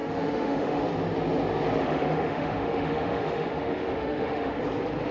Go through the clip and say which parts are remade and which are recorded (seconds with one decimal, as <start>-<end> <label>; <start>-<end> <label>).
0.0-0.8 remade; 0.8-1.8 recorded; 1.8-4.6 remade; 4.6-5.1 recorded